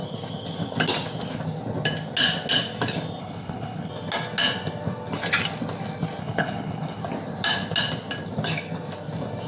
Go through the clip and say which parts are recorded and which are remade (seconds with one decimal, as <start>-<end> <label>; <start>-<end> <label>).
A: 0.0-3.2 recorded; 3.2-3.9 remade; 3.9-6.2 recorded; 6.2-7.0 remade; 7.0-9.5 recorded

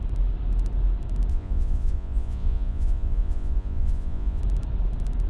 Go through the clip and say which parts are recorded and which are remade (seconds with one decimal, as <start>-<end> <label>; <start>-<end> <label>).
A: 0.0-1.3 recorded; 1.3-4.4 remade; 4.4-5.3 recorded

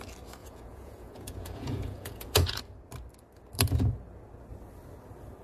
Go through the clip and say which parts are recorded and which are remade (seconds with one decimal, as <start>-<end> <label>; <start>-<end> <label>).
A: 0.0-0.4 recorded; 0.4-2.6 remade; 2.6-5.4 recorded

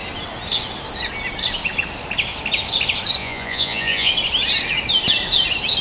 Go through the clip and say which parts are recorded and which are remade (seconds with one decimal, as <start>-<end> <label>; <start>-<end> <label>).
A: 0.0-3.2 recorded; 3.2-4.1 remade; 4.1-5.8 recorded

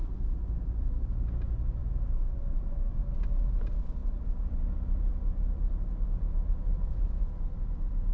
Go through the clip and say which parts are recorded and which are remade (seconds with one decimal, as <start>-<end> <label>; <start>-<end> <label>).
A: 0.0-1.8 recorded; 1.8-3.0 remade; 3.0-8.1 recorded